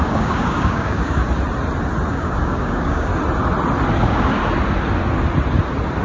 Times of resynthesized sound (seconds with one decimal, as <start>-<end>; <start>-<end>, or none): 0.0-1.2; 2.1-3.1; 4.0-4.4